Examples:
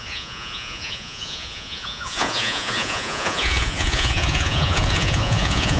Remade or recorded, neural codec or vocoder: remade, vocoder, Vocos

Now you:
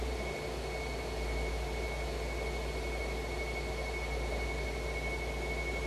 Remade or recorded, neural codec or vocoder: recorded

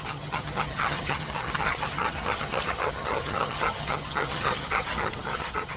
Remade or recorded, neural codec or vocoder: remade, vocoder, HiFi-GAN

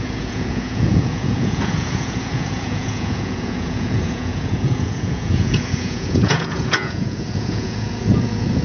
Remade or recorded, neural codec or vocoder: remade, vocoder, Vocos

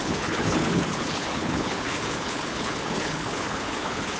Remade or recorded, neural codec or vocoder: remade, codec, HILCodec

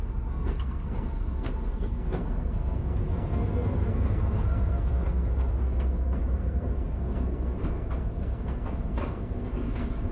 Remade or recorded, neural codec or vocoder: remade, codec, SNAC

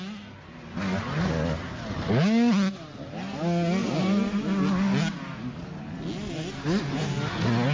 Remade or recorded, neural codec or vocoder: recorded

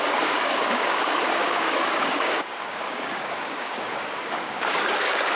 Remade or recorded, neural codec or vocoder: remade, codec, DAC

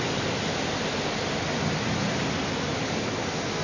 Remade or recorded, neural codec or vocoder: recorded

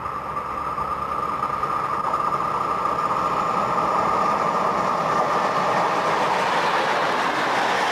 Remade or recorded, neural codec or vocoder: recorded